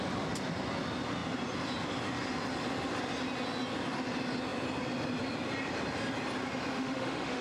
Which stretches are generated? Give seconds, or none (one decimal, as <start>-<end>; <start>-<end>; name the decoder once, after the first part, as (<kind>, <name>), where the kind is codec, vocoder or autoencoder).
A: 6.7-7.4 (autoencoder, DAC-VAE)